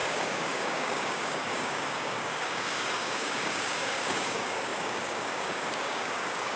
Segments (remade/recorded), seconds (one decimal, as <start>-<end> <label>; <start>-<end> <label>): 0.0-6.6 remade